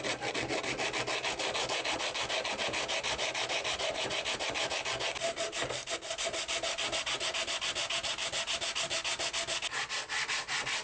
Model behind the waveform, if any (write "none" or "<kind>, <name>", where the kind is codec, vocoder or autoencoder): none